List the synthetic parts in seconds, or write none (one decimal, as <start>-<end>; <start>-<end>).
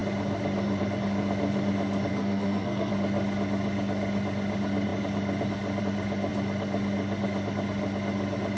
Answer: 2.1-2.9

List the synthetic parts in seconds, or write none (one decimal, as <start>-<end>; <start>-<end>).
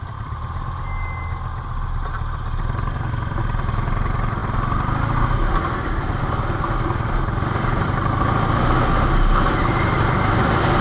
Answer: none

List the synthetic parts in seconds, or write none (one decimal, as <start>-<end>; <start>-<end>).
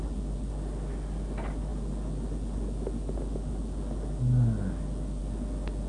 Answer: none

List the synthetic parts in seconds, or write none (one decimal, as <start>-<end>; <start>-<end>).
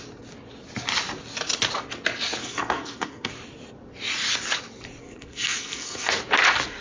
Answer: 2.4-3.3; 5.0-6.1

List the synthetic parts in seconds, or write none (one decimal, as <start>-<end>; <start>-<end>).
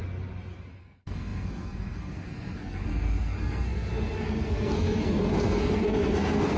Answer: 0.7-6.6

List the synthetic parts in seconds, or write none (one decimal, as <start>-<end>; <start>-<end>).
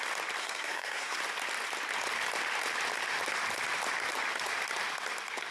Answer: 0.4-1.2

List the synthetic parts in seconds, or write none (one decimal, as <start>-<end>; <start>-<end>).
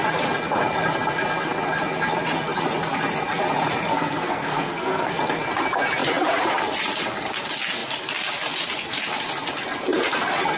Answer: 3.9-5.1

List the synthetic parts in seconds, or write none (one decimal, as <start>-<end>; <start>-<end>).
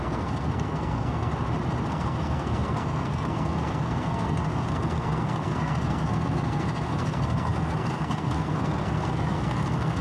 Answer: 0.0-1.3; 1.9-10.0